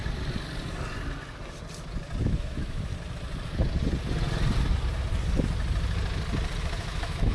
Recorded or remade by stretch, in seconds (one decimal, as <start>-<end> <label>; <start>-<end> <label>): 0.0-2.2 recorded; 2.2-2.9 remade; 2.9-6.6 recorded; 6.6-7.3 remade